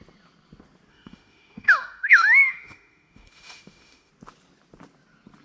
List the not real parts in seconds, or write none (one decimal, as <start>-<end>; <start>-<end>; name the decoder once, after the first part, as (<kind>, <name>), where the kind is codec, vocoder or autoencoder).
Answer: 0.9-4.1 (autoencoder, DAC-VAE)